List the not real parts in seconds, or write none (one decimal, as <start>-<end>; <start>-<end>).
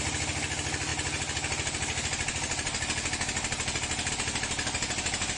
none